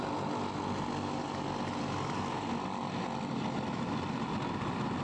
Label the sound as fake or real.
real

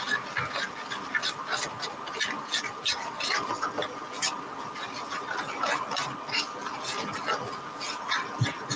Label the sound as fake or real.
real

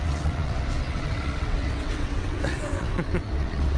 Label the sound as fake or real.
fake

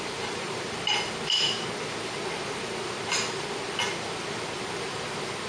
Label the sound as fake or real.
real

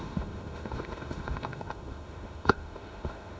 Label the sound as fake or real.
fake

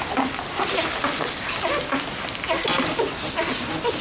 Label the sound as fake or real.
real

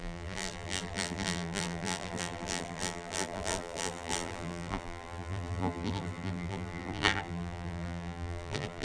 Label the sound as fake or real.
fake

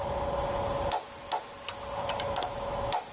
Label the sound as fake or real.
real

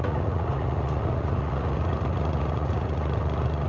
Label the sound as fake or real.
fake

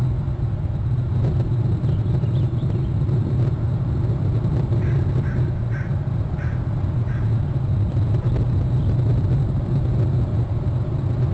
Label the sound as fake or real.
fake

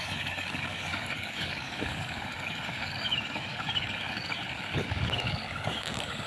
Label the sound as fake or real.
fake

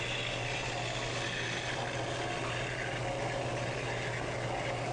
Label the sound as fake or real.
real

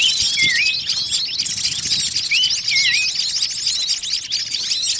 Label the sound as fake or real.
real